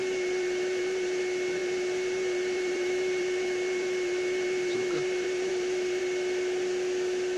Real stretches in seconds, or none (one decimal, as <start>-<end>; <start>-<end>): 1.2-1.6; 6.0-7.4